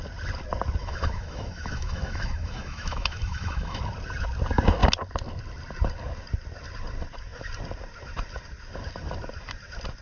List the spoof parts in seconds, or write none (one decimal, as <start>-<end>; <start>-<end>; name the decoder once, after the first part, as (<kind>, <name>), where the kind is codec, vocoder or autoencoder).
0.8-3.8 (autoencoder, DAC-VAE)

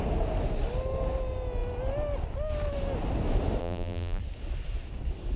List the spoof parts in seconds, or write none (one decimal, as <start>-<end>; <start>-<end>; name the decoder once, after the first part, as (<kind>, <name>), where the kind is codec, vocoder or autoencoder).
3.6-4.2 (vocoder, BigVGAN v2)

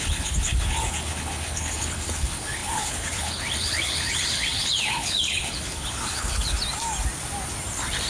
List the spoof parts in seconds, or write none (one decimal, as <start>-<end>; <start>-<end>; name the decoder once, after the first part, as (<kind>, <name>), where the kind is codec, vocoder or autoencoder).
0.0-6.6 (codec, HILCodec)